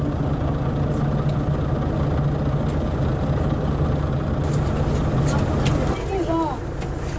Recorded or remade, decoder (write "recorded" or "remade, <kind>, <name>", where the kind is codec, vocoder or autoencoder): recorded